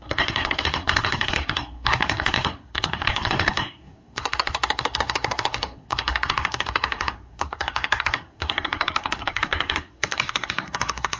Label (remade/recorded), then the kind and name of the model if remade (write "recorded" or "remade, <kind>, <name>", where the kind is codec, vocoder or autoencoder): remade, codec, SNAC